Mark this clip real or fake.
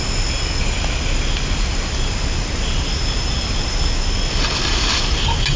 real